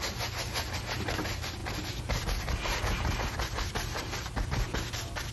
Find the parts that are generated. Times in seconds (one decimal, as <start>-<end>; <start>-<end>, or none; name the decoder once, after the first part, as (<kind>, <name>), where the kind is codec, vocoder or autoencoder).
none